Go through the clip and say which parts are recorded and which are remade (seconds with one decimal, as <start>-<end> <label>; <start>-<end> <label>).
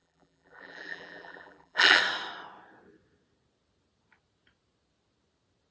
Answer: 0.0-2.0 remade; 2.0-5.7 recorded